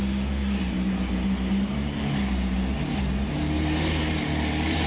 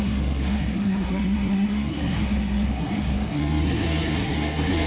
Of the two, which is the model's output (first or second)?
second